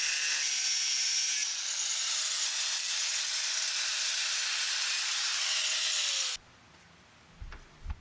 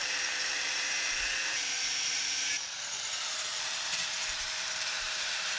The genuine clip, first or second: first